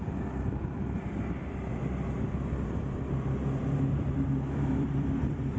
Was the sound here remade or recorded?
remade